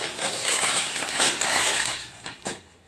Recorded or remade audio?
remade